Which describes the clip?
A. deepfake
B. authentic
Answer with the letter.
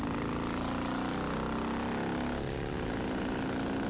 B